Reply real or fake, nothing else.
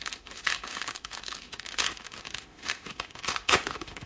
fake